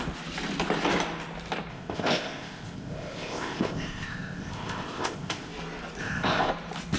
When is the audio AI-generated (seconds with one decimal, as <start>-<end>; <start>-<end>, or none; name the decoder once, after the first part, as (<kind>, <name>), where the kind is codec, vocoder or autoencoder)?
1.7-5.5 (codec, ZipCodec); 6.0-6.5